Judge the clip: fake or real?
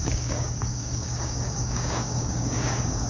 fake